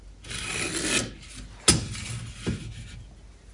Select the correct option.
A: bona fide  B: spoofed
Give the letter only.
A